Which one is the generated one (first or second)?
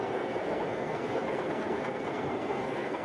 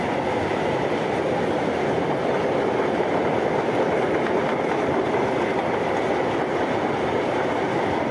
first